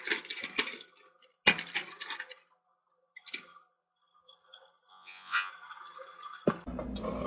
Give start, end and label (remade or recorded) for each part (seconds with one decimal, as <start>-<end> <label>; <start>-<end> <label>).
0.0-4.9 recorded; 4.9-5.5 remade; 5.5-7.3 recorded